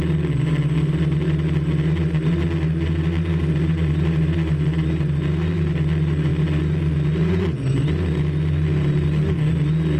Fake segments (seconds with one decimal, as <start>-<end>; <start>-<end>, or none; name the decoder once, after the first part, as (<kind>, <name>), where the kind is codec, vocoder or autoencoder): none

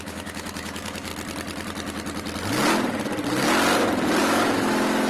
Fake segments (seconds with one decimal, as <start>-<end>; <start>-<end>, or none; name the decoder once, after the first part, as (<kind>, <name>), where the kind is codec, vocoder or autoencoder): 0.0-1.1 (autoencoder, DAC-VAE); 4.2-5.1

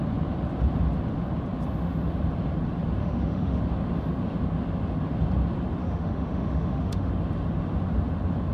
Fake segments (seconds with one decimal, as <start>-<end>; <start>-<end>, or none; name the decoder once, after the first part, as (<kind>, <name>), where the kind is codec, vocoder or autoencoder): 3.0-3.6 (autoencoder, DAC-VAE); 5.8-7.1

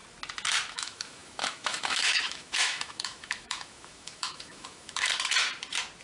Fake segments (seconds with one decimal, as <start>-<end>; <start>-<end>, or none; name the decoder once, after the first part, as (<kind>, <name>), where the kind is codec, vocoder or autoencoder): 0.7-5.1 (autoencoder, DAC-VAE)

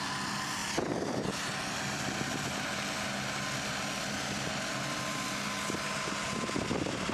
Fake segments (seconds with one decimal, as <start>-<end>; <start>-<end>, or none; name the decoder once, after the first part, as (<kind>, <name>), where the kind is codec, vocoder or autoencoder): none

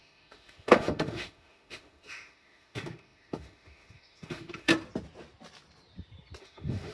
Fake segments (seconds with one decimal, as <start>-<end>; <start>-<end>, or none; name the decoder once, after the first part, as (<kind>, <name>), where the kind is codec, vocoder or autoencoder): 0.0-4.7 (autoencoder, DAC-VAE); 6.4-6.9

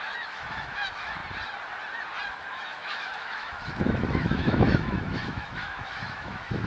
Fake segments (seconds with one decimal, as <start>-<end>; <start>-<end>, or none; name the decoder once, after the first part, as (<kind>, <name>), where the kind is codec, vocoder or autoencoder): 0.0-1.2 (autoencoder, DAC-VAE); 2.3-6.7

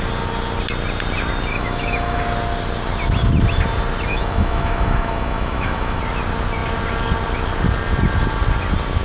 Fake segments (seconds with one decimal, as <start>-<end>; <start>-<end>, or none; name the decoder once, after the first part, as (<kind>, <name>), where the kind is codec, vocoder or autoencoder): 1.5-2.2 (autoencoder, DAC-VAE); 4.1-6.0